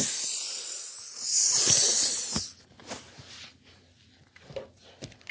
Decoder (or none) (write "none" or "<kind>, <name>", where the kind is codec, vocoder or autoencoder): none